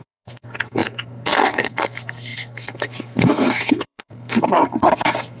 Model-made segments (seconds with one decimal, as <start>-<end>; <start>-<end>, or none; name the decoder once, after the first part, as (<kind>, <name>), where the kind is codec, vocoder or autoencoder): 0.0-5.4 (codec, SNAC)